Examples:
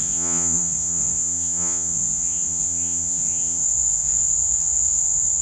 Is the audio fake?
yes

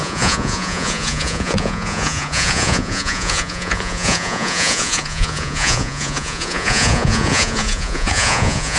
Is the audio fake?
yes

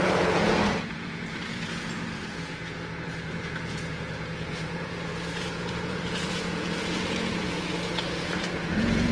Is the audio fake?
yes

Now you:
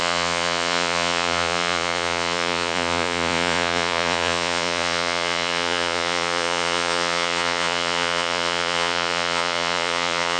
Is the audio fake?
yes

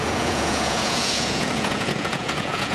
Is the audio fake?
yes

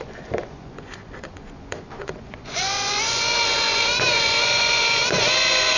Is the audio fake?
yes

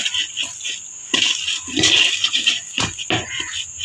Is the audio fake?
no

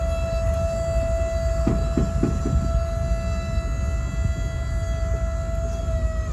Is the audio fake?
no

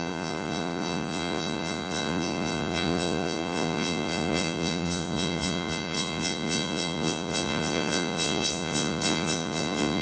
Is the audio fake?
yes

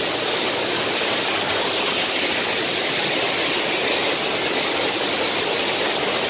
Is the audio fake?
no